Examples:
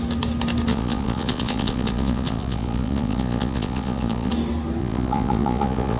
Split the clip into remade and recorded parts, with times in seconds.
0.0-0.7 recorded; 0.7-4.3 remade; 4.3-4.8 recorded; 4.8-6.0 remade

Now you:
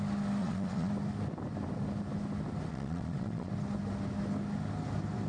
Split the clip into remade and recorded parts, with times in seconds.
0.0-0.4 recorded; 0.4-0.9 remade; 0.9-2.7 recorded; 2.7-3.5 remade; 3.5-5.3 recorded